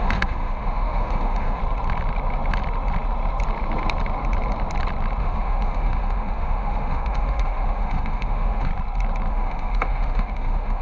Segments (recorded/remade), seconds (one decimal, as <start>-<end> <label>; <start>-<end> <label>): 0.0-1.6 remade; 1.6-5.2 recorded; 5.2-8.7 remade; 8.7-9.3 recorded; 9.3-10.8 remade